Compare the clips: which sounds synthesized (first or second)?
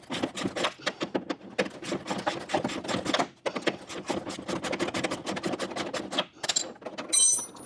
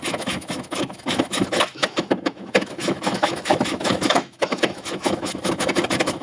second